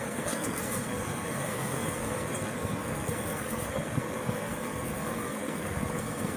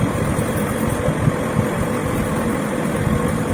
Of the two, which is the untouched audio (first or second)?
second